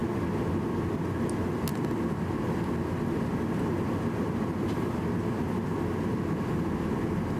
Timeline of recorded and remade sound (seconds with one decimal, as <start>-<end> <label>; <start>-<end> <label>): 0.0-7.4 recorded